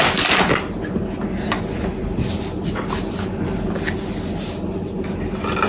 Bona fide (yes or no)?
yes